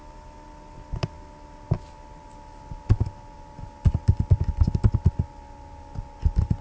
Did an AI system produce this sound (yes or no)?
no